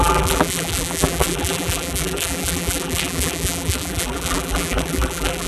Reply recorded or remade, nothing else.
remade